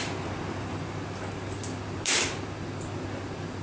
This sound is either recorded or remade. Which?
recorded